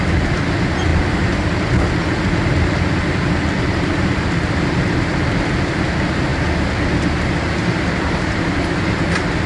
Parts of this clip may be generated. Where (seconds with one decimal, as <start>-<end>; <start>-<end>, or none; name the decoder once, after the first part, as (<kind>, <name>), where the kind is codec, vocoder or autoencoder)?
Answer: 7.6-8.3 (vocoder, BigVGAN v2)